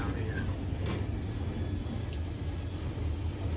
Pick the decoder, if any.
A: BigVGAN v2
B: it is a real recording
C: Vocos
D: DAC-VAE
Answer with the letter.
B